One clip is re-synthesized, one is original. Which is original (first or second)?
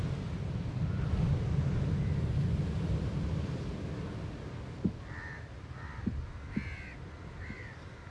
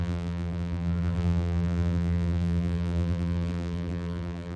first